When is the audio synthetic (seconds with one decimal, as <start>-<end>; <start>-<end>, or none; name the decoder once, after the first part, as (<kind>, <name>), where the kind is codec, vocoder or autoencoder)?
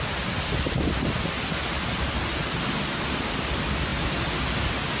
none